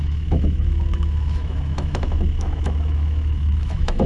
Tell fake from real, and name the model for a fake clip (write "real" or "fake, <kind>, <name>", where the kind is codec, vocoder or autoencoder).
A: fake, autoencoder, DAC-VAE